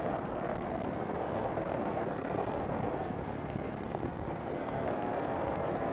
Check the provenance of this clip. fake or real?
fake